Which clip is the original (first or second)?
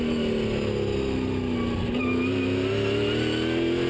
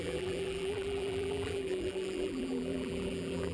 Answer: first